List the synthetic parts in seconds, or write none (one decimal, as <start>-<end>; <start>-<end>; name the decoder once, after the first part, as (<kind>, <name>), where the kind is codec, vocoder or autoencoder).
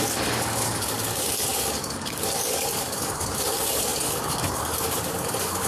0.0-5.7 (codec, DAC)